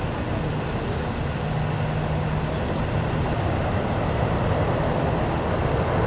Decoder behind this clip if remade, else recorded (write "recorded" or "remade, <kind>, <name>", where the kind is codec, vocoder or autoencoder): recorded